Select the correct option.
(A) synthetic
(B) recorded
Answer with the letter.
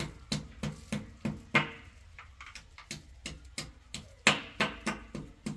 B